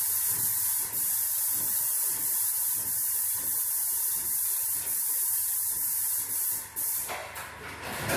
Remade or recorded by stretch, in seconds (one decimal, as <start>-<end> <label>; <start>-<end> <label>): 0.0-2.6 recorded; 2.6-5.7 remade; 5.7-7.2 recorded; 7.2-8.2 remade

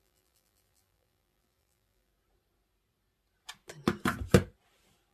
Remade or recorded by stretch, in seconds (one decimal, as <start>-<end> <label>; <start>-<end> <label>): 0.0-2.1 remade; 2.1-5.1 recorded

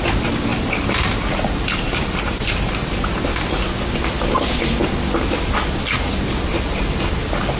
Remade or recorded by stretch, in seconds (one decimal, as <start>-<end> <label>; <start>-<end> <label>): 0.0-0.5 recorded; 0.5-2.5 remade; 2.5-7.6 recorded

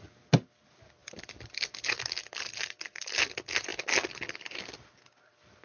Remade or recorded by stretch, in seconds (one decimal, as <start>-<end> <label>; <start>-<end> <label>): 0.0-1.0 recorded; 1.0-2.8 remade; 2.8-5.6 recorded

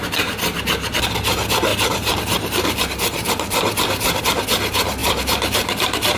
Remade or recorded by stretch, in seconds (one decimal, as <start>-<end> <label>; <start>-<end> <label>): 0.0-1.7 recorded; 1.7-4.2 remade; 4.2-5.0 recorded; 5.0-6.2 remade